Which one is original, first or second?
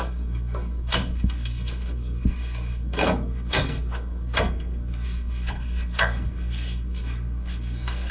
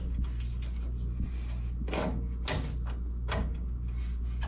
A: second